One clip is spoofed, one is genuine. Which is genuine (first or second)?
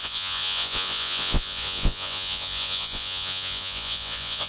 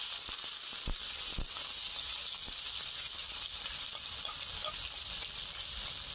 second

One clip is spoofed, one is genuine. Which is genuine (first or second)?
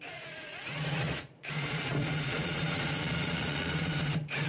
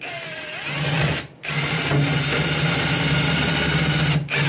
second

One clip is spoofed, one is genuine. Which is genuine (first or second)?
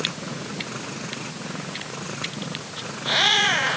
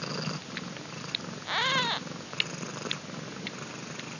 second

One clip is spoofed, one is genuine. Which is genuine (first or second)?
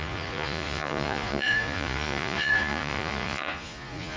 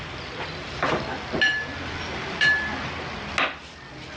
second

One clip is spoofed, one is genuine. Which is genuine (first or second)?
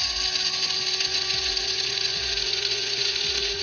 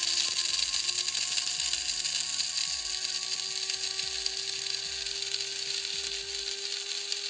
second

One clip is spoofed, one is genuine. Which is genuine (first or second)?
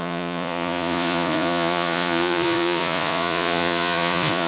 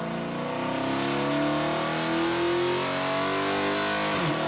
second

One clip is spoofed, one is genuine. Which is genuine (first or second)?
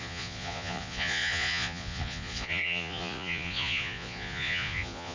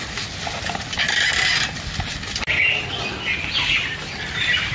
second